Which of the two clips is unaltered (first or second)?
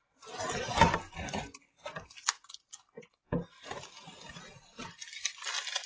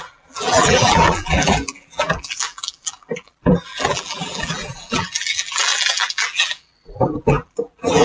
first